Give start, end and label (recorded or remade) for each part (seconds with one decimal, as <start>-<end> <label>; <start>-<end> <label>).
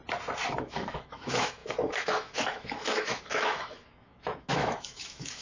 0.0-0.6 recorded; 0.6-5.4 remade